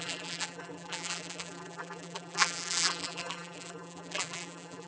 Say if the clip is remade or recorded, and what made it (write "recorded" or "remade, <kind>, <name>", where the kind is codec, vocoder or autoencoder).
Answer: remade, vocoder, BigVGAN v2